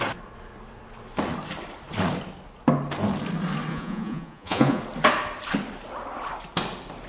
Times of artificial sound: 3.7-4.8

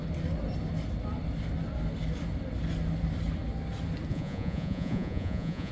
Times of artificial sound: 4.1-5.7

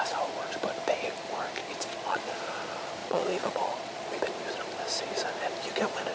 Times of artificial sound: 1.6-2.4; 3.0-4.2

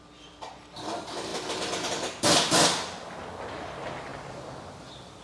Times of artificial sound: none

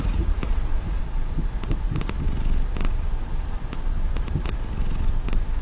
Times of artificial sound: 0.0-1.0

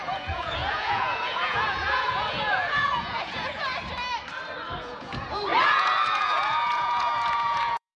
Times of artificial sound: 0.0-3.7; 4.8-8.0

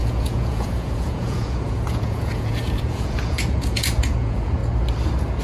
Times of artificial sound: 0.0-4.6